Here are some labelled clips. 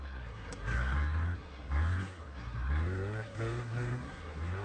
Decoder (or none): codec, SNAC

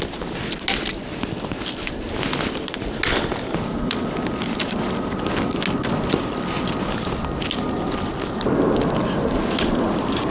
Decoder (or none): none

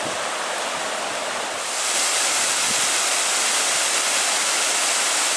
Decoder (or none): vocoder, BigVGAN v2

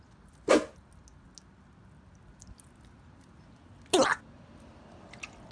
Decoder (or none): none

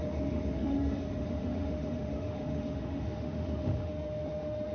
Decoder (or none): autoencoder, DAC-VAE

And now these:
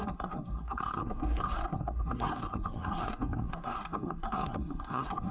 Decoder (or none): codec, SNAC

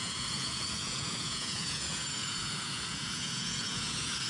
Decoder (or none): vocoder, Vocos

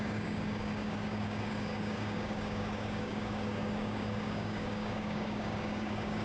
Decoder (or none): codec, DAC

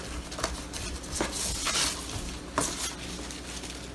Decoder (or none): none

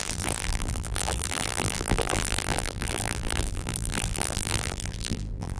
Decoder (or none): vocoder, BigVGAN v2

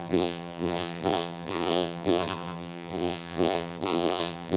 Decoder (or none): vocoder, BigVGAN v2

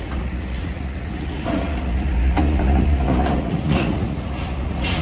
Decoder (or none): vocoder, Vocos